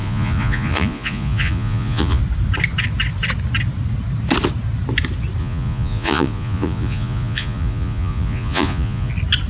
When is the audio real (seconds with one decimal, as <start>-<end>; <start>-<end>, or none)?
2.2-5.4; 9.1-9.5